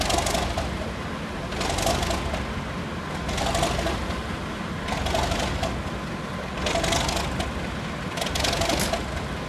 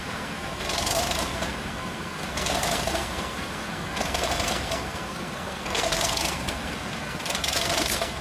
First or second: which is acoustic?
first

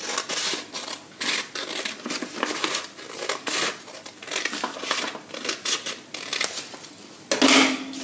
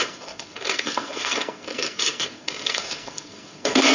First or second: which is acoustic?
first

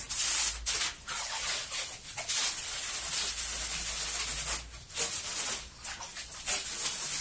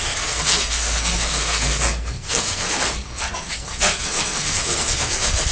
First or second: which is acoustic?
first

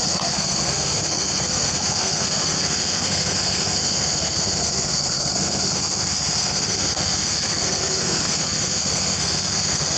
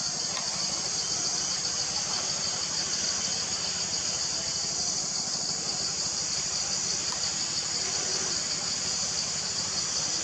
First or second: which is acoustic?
second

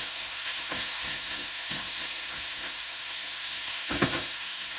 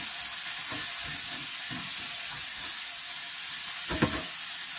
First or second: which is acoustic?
second